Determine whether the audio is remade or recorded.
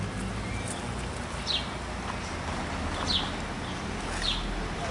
recorded